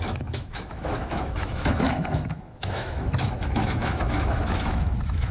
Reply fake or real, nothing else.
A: fake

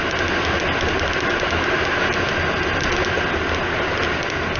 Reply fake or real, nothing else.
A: real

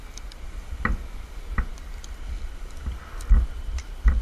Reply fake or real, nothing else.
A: real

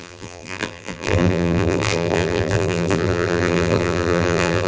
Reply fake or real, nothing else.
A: fake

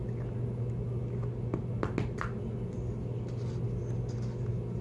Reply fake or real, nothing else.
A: real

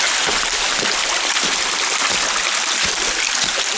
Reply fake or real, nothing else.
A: real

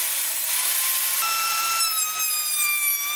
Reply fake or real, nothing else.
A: fake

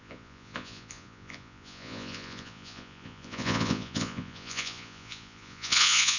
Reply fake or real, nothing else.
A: fake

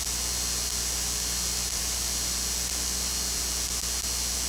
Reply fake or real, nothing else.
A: real